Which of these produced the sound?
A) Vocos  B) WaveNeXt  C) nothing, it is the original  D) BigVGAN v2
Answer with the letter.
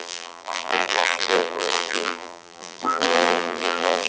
D